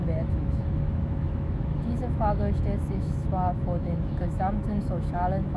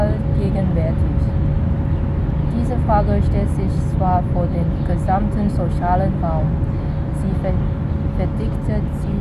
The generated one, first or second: first